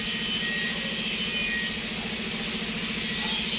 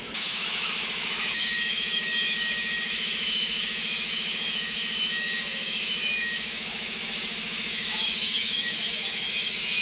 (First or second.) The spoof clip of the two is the second